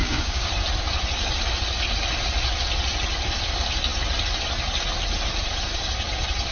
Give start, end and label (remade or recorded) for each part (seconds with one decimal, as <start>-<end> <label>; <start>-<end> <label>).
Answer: 0.0-0.5 remade; 0.5-6.5 recorded